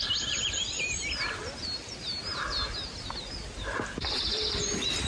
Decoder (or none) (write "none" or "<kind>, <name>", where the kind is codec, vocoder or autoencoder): none